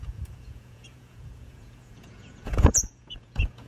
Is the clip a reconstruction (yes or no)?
yes